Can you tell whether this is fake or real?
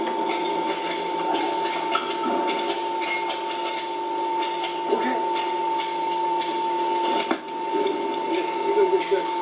real